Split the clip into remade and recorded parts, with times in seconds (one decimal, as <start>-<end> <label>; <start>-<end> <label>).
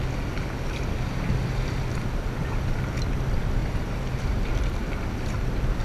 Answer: 0.0-5.8 recorded